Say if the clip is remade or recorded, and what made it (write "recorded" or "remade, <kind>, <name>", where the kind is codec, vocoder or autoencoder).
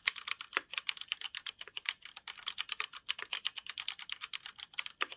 recorded